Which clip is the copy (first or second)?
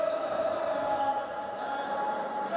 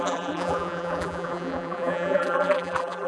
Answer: second